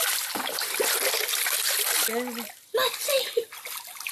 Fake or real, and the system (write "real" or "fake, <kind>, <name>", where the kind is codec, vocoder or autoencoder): real